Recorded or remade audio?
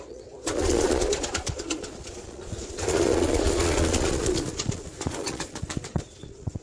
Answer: remade